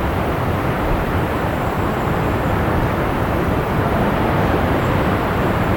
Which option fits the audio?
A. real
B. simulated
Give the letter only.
B